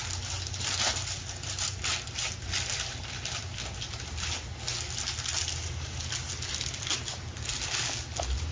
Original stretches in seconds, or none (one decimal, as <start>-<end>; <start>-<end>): 0.0-8.5